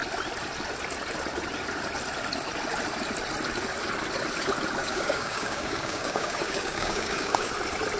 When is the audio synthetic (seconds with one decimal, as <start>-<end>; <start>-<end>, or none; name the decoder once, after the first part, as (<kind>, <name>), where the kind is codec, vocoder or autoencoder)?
4.8-7.5 (codec, DAC)